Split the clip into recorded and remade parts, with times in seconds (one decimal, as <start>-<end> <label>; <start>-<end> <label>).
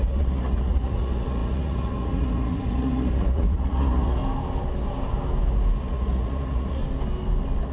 0.0-4.2 remade; 4.2-5.8 recorded; 5.8-6.8 remade; 6.8-7.7 recorded